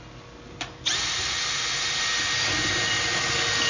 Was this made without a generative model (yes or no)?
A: yes